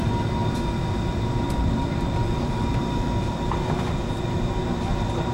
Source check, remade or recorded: recorded